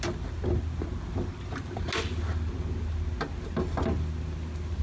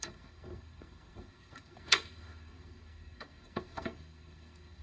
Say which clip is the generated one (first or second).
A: second